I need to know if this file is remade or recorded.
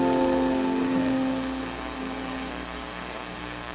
remade